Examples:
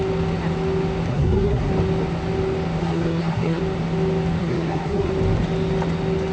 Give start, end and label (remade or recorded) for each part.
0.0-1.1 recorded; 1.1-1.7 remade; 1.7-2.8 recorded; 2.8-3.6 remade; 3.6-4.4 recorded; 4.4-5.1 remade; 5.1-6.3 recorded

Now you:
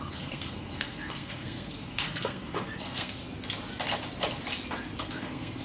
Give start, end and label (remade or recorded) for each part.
0.0-3.2 remade; 3.2-5.0 recorded; 5.0-5.6 remade

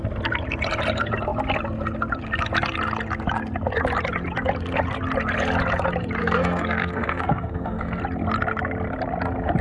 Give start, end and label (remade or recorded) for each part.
0.0-6.2 recorded; 6.2-8.0 remade; 8.0-9.6 recorded